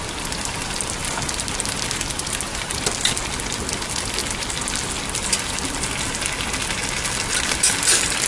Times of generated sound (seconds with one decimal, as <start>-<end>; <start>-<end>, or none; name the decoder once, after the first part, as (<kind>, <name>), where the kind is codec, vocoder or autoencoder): none